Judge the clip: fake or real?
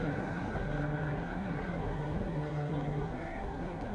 fake